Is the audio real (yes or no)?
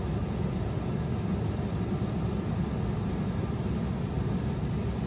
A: yes